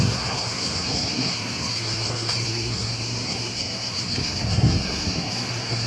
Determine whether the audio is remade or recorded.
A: remade